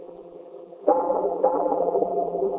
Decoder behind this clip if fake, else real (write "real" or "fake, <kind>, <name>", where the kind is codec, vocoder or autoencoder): fake, vocoder, BigVGAN v2